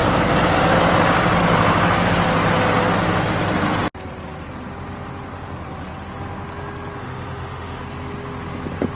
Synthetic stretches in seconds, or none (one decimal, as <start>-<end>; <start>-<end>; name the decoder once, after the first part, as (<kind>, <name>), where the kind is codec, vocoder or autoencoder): 7.0-7.8 (autoencoder, DAC-VAE)